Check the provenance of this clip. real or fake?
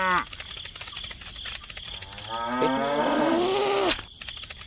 real